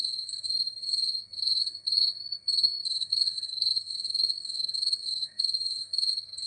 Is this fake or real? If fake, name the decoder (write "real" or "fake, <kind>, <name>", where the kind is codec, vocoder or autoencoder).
fake, codec, SNAC